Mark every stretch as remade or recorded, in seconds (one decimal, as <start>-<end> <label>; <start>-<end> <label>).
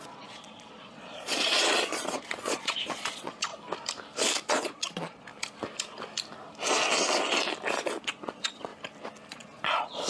0.0-3.5 remade; 3.5-4.5 recorded; 4.5-5.3 remade; 5.3-8.0 recorded; 8.0-8.7 remade; 8.7-9.3 recorded; 9.3-10.1 remade